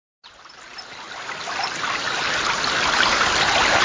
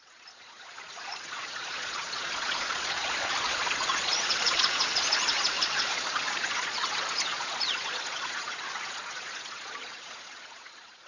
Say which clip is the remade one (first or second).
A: second